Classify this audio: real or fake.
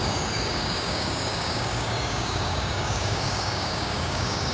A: fake